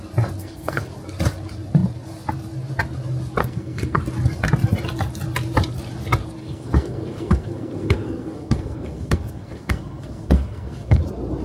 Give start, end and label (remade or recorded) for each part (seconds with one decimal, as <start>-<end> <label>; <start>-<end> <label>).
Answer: 0.0-0.4 recorded; 0.4-0.9 remade; 0.9-3.4 recorded; 3.4-4.0 remade; 4.0-6.4 recorded; 6.4-11.0 remade; 11.0-11.4 recorded